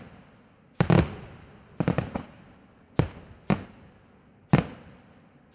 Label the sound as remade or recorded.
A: recorded